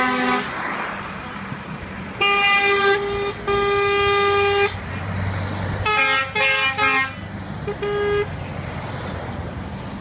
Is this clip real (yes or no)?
yes